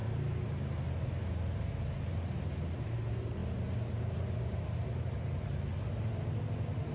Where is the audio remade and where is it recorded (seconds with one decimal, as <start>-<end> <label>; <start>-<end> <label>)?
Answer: 0.0-6.9 recorded